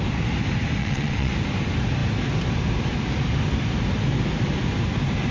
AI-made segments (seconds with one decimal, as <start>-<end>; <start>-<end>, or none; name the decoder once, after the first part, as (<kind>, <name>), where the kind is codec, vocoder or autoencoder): 0.8-1.3 (vocoder, WaveNeXt)